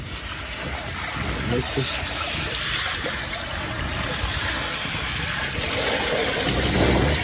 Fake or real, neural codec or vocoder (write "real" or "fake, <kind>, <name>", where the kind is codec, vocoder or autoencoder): real